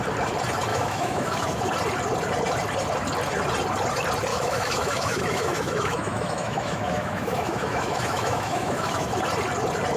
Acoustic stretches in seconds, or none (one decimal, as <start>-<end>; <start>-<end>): 0.0-0.7; 1.7-4.3; 9.2-10.0